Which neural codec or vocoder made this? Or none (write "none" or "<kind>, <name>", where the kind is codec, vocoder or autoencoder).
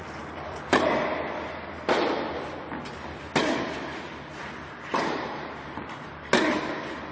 none